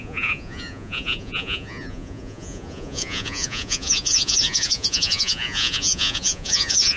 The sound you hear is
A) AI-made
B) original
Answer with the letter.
A